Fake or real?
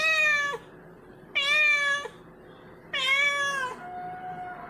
real